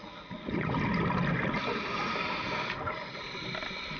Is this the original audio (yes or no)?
yes